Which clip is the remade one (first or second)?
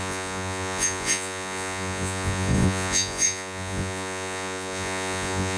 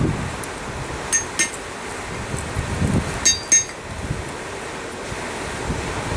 first